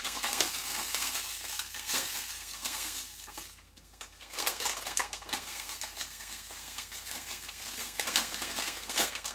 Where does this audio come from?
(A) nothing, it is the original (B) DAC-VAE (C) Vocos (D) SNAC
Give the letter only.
D